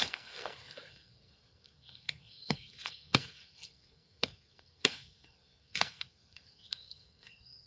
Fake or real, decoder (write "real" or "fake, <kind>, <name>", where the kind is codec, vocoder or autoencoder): fake, codec, SNAC